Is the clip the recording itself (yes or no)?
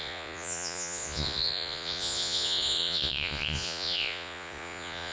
no